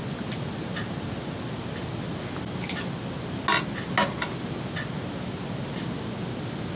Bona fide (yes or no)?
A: yes